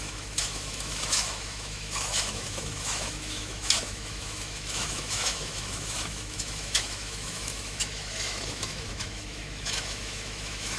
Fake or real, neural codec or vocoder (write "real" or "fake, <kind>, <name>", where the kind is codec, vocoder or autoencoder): fake, autoencoder, DAC-VAE